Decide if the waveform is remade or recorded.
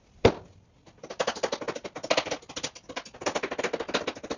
recorded